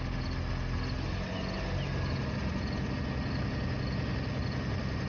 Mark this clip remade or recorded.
recorded